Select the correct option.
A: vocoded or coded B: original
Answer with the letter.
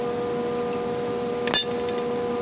B